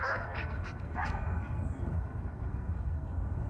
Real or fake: fake